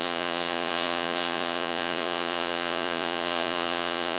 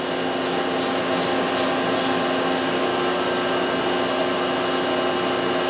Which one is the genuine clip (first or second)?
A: second